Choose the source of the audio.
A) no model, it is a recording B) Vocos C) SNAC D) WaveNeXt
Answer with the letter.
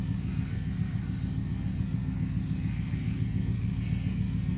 C